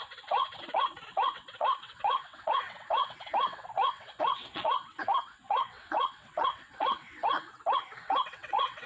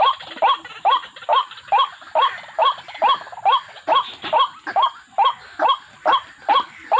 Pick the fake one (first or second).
first